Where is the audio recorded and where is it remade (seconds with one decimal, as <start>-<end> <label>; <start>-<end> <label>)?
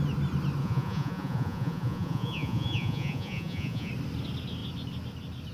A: 0.0-0.6 recorded; 0.6-3.9 remade; 3.9-5.5 recorded